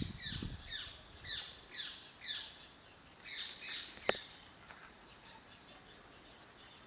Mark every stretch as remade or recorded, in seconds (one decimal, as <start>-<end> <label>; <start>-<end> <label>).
0.0-0.4 recorded; 0.4-1.4 remade; 1.4-4.8 recorded; 4.8-5.7 remade; 5.7-6.9 recorded